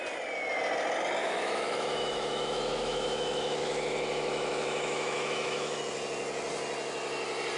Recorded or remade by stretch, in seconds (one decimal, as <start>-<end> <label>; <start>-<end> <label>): 0.0-1.2 recorded; 1.2-5.8 remade; 5.8-7.6 recorded